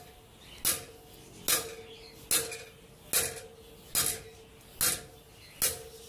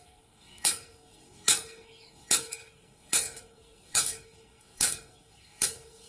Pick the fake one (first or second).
second